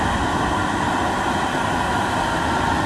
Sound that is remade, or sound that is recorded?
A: recorded